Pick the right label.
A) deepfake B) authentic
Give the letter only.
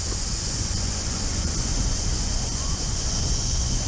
A